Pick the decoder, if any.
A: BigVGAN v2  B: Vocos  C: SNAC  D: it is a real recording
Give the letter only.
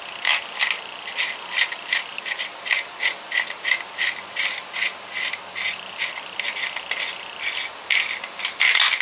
D